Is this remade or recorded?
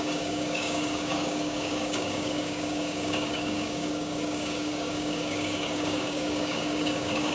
remade